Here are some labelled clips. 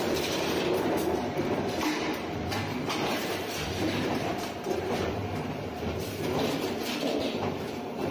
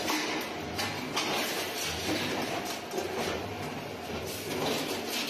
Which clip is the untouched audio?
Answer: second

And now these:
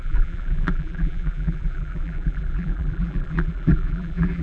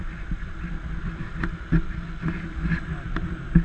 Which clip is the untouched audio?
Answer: second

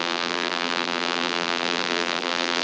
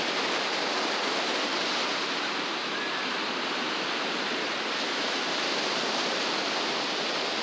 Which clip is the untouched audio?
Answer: second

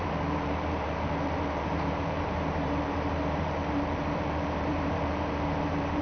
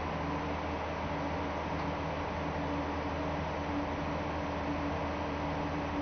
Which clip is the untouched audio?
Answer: second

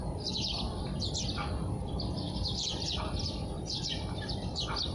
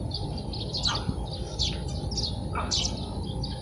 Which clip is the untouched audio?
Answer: second